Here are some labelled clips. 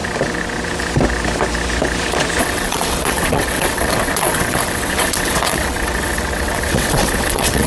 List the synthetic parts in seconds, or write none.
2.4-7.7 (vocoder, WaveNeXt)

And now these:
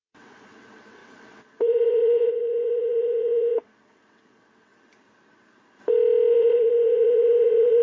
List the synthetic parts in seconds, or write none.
0.0-4.7 (vocoder, WaveNeXt); 6.3-7.8

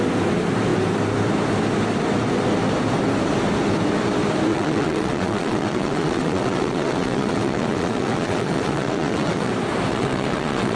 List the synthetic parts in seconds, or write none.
4.5-9.5 (vocoder, WaveNeXt); 9.9-10.8

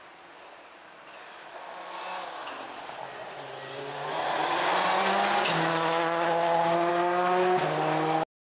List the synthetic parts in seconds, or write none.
none

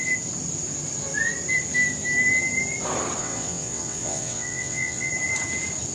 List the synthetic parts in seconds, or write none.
3.2-5.1 (vocoder, WaveNeXt)